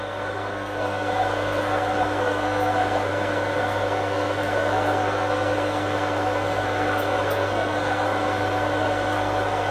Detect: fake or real fake